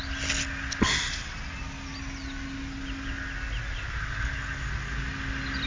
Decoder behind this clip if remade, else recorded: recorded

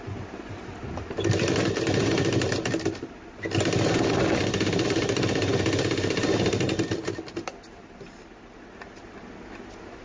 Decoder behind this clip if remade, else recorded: recorded